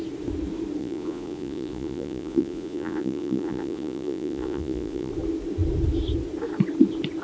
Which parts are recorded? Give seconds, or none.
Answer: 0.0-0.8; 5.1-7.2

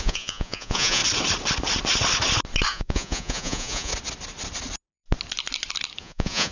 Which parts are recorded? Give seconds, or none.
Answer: 1.0-2.7; 3.9-6.0

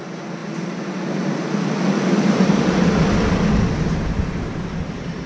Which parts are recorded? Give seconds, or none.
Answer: 0.0-5.3